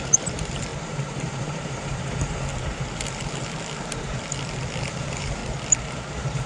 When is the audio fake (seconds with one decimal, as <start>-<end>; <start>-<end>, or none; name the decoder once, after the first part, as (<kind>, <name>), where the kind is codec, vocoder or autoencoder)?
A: 0.0-2.5 (vocoder, BigVGAN v2); 4.9-5.4; 6.1-6.5